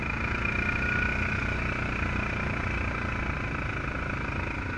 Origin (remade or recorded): recorded